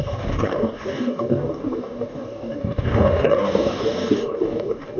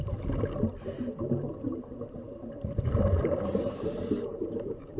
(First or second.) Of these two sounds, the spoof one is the first